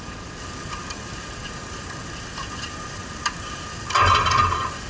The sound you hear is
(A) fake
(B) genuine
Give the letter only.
B